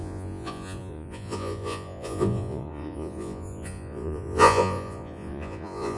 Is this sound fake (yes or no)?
yes